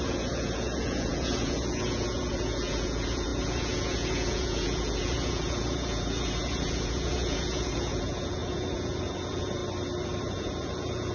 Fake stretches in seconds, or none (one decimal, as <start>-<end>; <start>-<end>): 0.0-9.6; 10.2-11.1